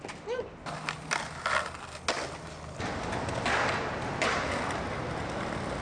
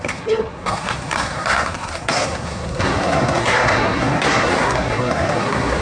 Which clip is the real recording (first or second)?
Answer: first